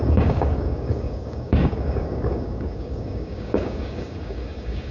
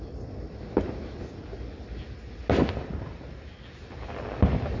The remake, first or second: first